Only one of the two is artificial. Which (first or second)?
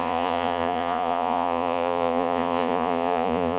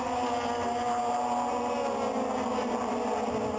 first